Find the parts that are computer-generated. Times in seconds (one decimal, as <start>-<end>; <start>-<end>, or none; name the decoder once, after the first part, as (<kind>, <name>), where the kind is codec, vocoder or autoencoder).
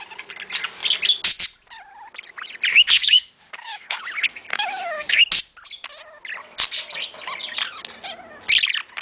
2.7-4.0 (autoencoder, DAC-VAE); 4.5-5.2